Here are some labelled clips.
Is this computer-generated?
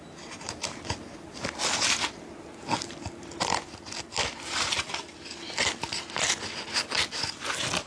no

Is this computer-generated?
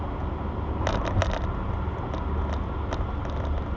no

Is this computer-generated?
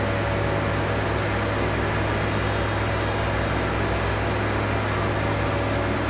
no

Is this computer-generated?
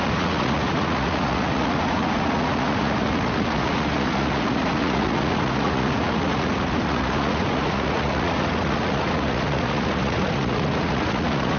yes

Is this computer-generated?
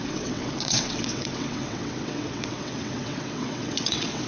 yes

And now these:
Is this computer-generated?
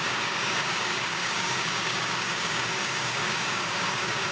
yes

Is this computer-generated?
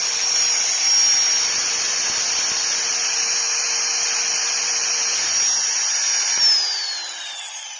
no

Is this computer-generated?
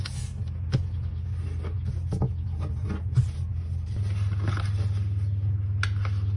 no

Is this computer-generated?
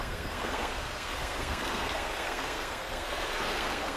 yes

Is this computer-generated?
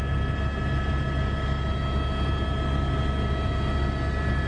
no